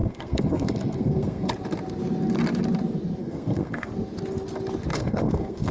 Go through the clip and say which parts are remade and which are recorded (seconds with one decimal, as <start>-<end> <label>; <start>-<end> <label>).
0.0-1.5 remade; 1.5-3.2 recorded; 3.2-3.9 remade; 3.9-4.9 recorded; 4.9-5.7 remade